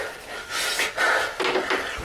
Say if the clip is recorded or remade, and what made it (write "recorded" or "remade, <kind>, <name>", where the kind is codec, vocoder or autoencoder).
recorded